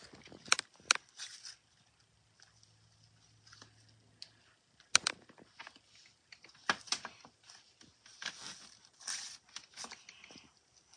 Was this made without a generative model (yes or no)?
yes